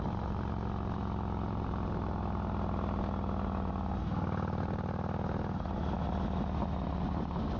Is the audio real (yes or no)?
yes